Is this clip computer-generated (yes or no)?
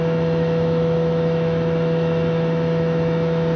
yes